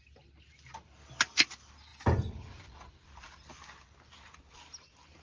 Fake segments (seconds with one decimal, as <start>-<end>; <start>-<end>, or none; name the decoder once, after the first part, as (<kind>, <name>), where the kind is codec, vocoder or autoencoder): none